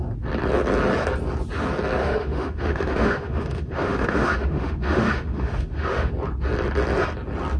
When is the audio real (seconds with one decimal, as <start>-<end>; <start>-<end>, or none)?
0.0-2.0; 6.1-7.6